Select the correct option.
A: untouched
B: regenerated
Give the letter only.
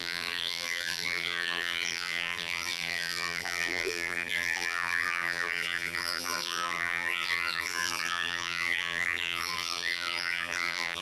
B